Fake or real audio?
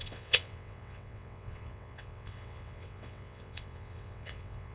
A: fake